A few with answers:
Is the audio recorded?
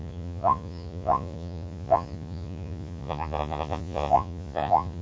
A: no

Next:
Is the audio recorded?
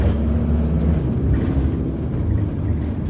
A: yes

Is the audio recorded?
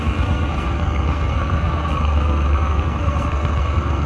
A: no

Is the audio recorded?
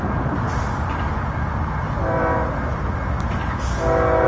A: yes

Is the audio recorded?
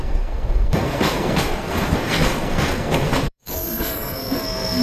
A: no